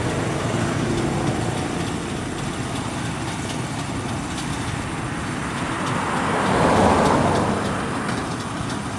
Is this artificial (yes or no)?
no